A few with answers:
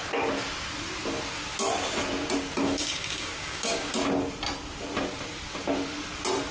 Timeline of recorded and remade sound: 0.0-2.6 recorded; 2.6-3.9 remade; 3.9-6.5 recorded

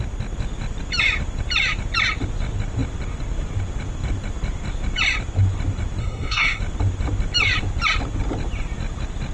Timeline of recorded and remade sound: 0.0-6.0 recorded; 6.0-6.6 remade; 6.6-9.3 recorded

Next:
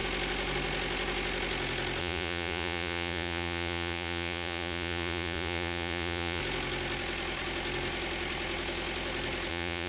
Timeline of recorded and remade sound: 0.0-2.0 recorded; 2.0-6.4 remade; 6.4-9.5 recorded; 9.5-9.9 remade

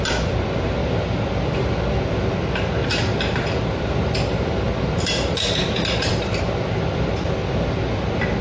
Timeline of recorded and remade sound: 0.0-0.8 recorded; 0.8-1.6 remade; 1.6-2.8 recorded; 2.8-6.7 remade; 6.7-8.4 recorded

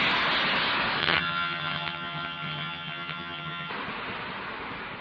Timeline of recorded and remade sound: 0.0-1.0 recorded; 1.0-3.7 remade; 3.7-5.0 recorded

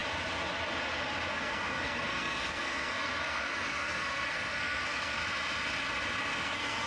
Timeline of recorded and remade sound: 0.0-1.3 recorded; 1.3-5.2 remade; 5.2-6.4 recorded; 6.4-6.9 remade